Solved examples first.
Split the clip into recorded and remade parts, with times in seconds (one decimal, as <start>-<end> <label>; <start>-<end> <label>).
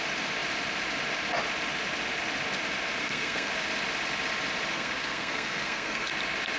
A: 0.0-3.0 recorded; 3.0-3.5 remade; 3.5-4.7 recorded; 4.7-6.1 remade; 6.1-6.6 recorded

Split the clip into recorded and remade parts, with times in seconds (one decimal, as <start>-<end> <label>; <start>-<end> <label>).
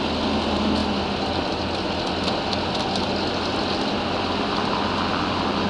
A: 0.0-5.7 recorded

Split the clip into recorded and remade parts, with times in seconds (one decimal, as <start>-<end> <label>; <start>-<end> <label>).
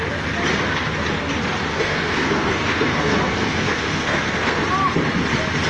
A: 0.0-1.7 recorded; 1.7-4.6 remade; 4.6-5.7 recorded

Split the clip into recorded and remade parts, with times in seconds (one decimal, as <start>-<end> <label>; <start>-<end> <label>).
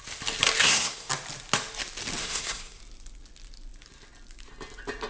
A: 0.0-0.6 recorded; 0.6-1.1 remade; 1.1-2.2 recorded; 2.2-2.8 remade; 2.8-5.1 recorded